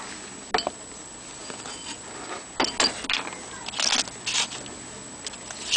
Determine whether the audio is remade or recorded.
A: recorded